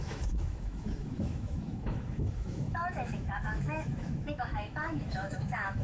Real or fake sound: fake